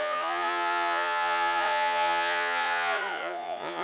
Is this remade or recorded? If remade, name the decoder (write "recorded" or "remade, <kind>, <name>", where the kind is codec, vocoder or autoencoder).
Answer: remade, vocoder, Vocos